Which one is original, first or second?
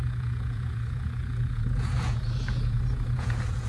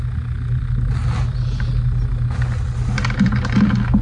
second